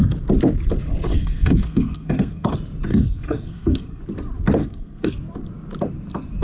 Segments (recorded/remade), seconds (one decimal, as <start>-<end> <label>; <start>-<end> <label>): 0.0-1.1 recorded; 1.1-2.5 remade; 2.5-2.9 recorded; 2.9-4.0 remade; 4.0-4.6 recorded; 4.6-5.1 remade; 5.1-6.4 recorded